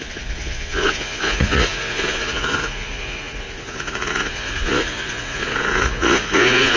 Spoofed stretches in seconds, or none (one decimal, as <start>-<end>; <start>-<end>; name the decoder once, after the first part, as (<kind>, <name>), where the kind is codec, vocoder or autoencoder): 0.0-6.8 (vocoder, Vocos)